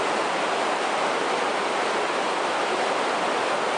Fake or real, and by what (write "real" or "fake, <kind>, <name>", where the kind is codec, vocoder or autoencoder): real